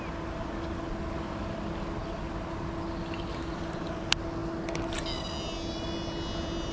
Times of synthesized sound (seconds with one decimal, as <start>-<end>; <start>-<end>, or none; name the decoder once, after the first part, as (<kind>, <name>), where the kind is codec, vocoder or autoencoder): none